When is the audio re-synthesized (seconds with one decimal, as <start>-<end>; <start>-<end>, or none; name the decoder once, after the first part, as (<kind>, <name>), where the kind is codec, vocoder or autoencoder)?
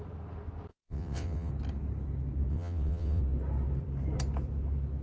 0.7-1.5 (vocoder, WaveNeXt); 2.5-3.2